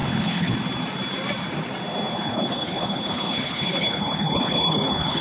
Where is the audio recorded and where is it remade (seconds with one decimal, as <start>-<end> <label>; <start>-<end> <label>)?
0.0-0.5 remade; 0.5-2.1 recorded; 2.1-5.2 remade